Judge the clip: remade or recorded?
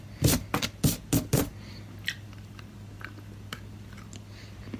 recorded